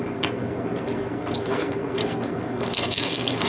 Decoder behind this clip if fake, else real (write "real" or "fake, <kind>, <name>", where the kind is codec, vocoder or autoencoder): fake, codec, SNAC